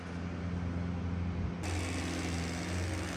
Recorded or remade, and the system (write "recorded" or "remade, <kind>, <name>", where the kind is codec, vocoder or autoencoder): recorded